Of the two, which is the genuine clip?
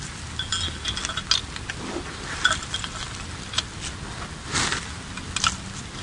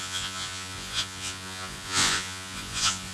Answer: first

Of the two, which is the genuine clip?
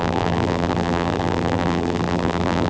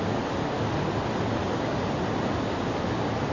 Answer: second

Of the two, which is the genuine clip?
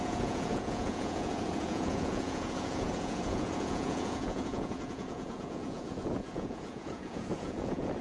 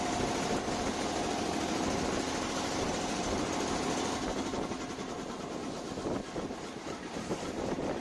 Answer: second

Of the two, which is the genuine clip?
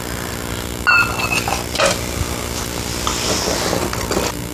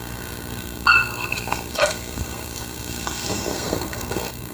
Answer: first